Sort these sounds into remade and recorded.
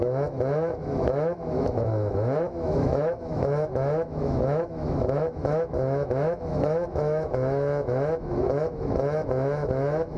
remade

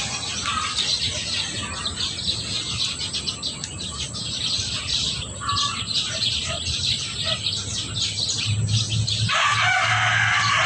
recorded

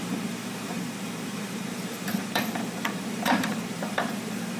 remade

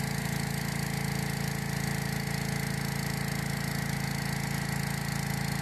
recorded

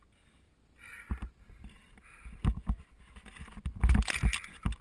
recorded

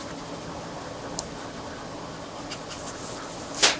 recorded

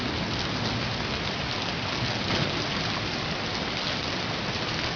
recorded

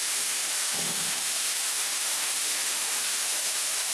remade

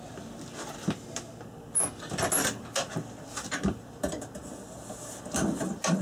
recorded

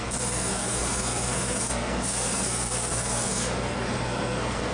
remade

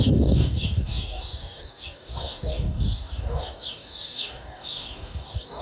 remade